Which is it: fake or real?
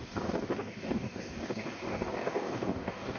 fake